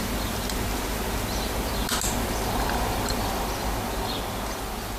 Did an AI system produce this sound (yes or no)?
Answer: no